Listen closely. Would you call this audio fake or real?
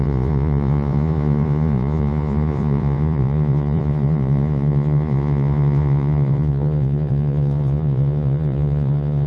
fake